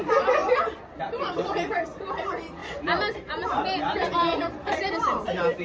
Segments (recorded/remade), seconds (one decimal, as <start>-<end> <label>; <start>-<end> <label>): 0.0-5.6 remade